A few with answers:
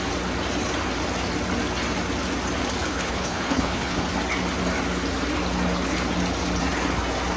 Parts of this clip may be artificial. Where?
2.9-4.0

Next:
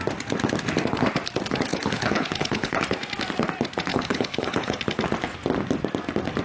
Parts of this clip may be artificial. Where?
1.7-2.8; 3.9-4.8

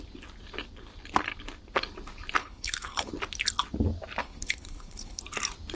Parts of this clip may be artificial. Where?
2.4-3.1; 4.2-5.2

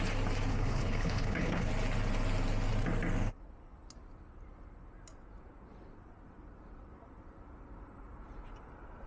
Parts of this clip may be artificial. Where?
0.5-1.7

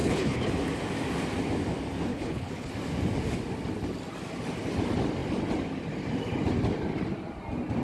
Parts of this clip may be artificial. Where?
0.0-0.5; 2.1-2.7

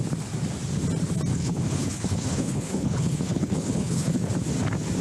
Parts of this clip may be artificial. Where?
1.3-4.3

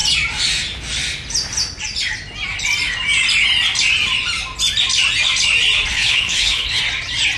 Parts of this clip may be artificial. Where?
5.9-6.8